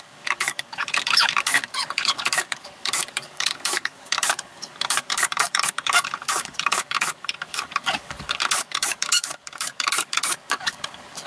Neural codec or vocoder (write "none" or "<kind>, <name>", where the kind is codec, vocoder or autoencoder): codec, DAC